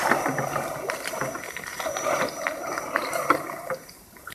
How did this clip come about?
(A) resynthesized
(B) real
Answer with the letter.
A